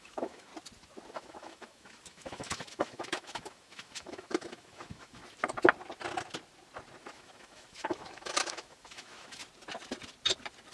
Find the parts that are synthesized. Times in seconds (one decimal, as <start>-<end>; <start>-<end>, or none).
0.0-0.5; 1.1-5.2; 7.0-9.4